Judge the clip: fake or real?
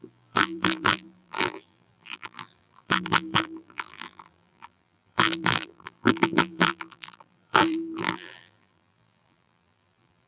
fake